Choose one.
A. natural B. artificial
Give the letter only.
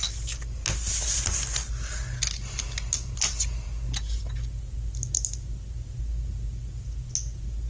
A